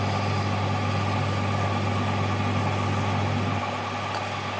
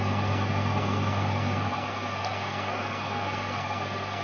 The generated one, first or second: second